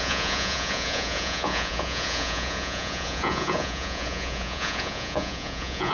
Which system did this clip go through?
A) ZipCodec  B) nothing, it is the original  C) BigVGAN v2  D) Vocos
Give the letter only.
D